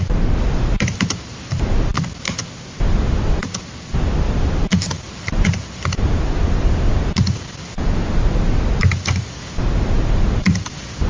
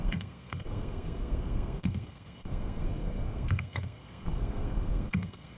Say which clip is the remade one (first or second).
second